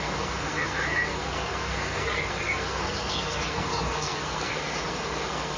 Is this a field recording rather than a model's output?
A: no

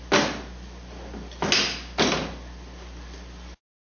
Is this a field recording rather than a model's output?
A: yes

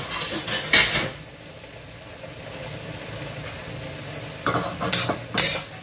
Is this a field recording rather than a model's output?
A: yes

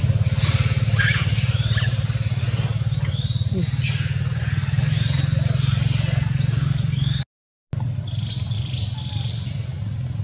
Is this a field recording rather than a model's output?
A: yes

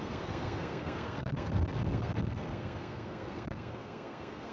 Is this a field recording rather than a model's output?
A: no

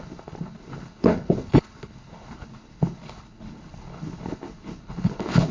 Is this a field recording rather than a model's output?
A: no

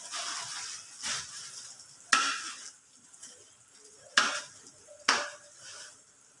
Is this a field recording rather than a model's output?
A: yes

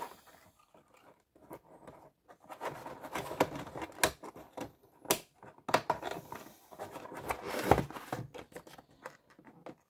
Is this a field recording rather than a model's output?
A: yes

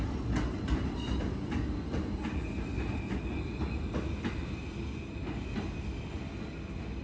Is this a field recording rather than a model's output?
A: yes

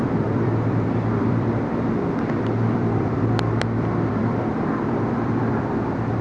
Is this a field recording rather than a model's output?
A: no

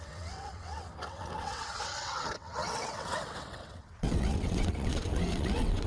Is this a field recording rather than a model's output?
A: no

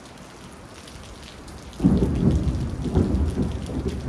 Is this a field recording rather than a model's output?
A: yes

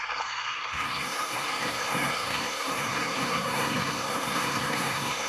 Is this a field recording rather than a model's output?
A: no